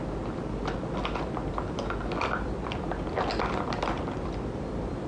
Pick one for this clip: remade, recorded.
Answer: recorded